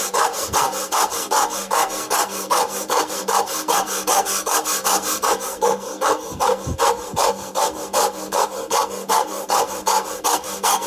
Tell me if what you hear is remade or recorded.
remade